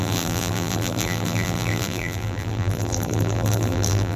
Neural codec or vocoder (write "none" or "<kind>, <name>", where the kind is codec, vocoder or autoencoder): vocoder, BigVGAN v2